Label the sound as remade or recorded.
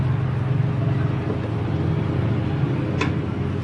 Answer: recorded